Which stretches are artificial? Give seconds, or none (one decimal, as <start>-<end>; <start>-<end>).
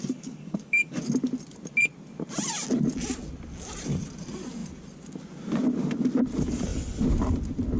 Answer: 0.0-1.0